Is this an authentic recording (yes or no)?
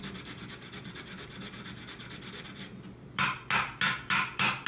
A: yes